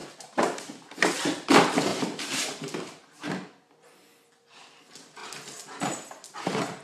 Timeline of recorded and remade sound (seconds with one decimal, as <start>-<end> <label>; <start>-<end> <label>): 0.0-1.1 remade; 1.1-1.9 recorded; 1.9-3.3 remade; 3.3-6.8 recorded